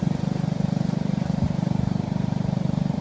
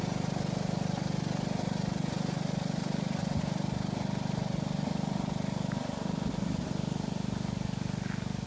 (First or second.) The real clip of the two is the second